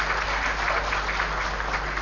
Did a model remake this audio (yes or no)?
no